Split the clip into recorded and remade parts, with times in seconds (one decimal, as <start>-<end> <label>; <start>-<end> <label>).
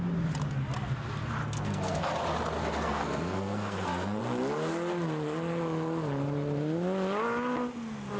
0.0-1.4 recorded; 1.4-2.1 remade; 2.1-2.6 recorded; 2.6-4.2 remade; 4.2-8.2 recorded